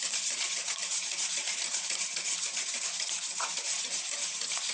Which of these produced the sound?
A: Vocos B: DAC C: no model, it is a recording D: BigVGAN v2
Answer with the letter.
A